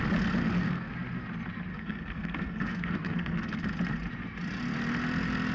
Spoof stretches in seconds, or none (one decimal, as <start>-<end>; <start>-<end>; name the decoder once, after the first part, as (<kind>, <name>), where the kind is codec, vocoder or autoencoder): 0.4-0.9 (codec, SNAC); 1.7-3.6